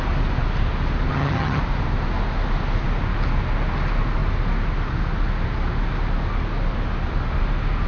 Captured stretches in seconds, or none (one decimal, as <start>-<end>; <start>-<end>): 0.0-1.1; 1.6-7.9